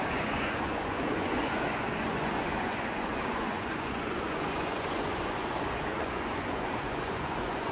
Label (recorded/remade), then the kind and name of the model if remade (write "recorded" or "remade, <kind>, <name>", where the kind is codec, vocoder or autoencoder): remade, vocoder, Vocos